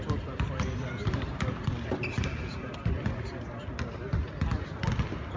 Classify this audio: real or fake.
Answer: real